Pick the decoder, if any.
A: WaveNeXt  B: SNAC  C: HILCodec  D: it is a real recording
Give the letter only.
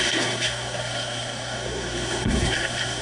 B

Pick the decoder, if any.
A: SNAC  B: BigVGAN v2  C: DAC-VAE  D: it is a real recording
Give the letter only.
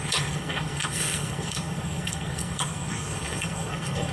A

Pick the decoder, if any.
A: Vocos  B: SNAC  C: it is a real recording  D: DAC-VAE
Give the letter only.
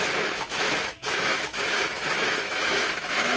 D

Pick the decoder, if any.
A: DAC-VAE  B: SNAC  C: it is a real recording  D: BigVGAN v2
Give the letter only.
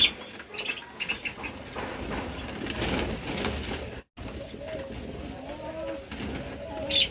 C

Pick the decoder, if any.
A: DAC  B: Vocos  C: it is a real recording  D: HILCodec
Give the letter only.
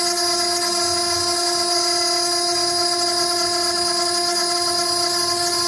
C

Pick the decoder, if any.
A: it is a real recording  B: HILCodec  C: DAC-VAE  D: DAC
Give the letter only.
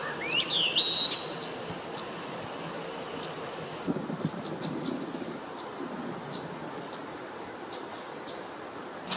A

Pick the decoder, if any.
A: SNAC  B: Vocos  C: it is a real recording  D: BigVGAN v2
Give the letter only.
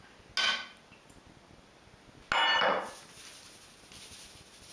C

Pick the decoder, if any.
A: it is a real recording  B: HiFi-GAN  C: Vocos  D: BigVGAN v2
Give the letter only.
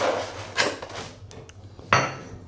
A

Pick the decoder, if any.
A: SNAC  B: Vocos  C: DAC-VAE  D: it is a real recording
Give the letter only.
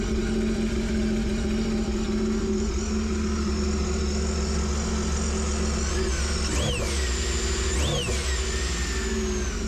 D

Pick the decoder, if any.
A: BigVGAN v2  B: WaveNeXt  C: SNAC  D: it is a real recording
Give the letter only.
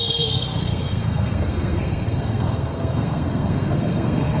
C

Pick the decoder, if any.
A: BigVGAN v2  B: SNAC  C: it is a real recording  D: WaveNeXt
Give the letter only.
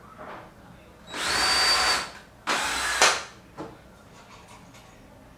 C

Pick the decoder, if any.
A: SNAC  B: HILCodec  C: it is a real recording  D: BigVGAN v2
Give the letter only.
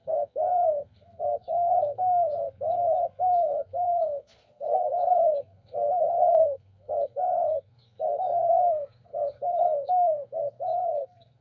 A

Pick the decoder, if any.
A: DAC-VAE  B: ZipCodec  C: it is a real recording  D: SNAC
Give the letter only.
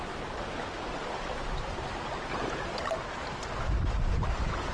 C